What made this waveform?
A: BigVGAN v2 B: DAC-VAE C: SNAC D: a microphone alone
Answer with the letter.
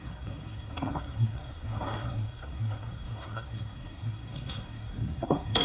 C